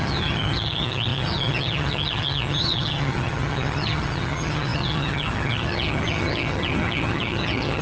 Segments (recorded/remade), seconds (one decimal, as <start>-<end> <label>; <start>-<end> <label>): 0.0-7.8 remade